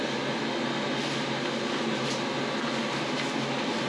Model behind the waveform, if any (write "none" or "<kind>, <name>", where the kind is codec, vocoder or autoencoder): none